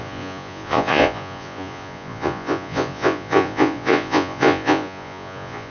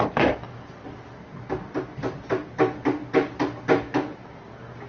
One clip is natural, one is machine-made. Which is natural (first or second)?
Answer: second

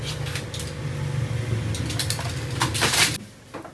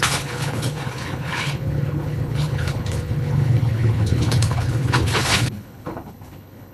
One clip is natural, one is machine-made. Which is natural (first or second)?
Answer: first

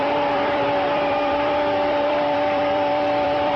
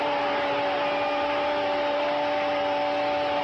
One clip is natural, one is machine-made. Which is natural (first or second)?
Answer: second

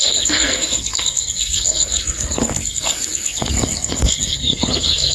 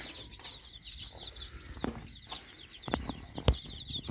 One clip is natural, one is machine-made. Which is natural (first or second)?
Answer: second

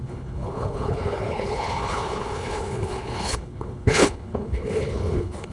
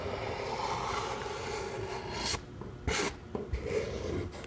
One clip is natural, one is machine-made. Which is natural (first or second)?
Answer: second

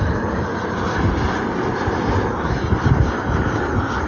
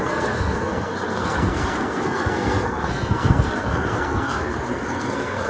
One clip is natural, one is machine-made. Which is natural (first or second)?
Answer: first